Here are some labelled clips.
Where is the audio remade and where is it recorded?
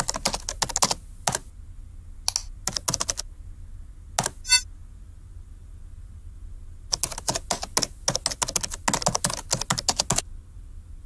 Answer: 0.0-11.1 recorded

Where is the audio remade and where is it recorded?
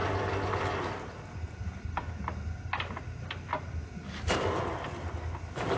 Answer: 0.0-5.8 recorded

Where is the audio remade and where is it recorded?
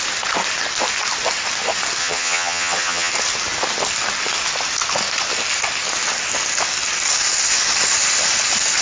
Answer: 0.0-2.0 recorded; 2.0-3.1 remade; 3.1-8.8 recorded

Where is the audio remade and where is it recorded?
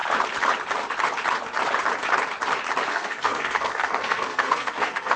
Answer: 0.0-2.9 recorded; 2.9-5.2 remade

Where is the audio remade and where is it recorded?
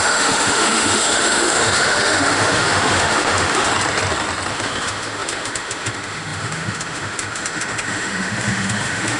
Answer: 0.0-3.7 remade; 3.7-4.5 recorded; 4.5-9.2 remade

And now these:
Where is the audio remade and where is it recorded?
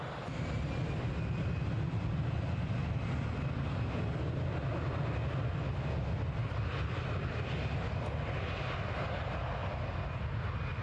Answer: 0.0-10.8 recorded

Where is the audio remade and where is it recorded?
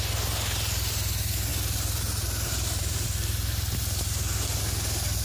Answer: 0.0-1.5 recorded; 1.5-4.6 remade; 4.6-5.2 recorded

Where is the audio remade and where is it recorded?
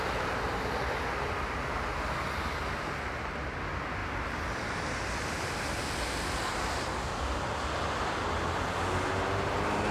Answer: 0.0-9.9 recorded